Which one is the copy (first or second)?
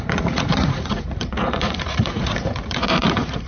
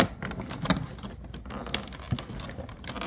first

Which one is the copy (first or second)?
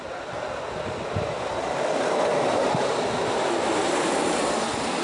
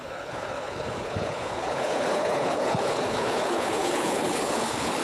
second